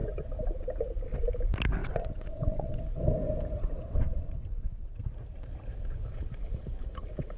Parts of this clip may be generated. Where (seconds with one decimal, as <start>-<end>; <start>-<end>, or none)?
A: 1.8-2.8; 3.7-5.1